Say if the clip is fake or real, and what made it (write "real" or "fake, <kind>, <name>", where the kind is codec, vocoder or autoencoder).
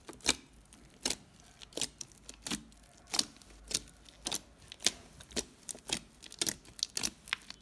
real